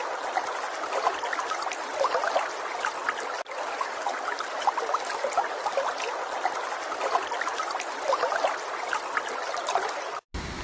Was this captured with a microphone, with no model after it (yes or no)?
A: yes